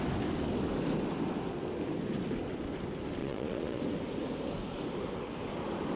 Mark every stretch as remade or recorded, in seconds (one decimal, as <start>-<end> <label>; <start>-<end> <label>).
0.0-3.2 recorded; 3.2-3.8 remade; 3.8-6.0 recorded